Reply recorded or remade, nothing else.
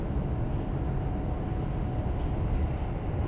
recorded